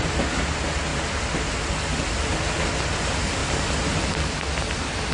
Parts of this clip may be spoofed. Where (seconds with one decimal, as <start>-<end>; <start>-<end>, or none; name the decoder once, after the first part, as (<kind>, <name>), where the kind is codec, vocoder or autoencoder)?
none